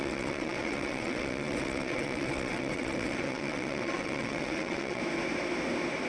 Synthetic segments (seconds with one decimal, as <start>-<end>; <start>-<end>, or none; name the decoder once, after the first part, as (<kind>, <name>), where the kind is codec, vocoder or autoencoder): 0.0-5.0 (vocoder, WaveNeXt)